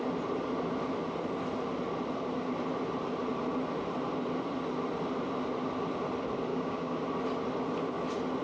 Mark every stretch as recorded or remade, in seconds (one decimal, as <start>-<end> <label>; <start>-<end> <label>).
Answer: 0.0-6.5 recorded; 6.5-7.0 remade; 7.0-8.4 recorded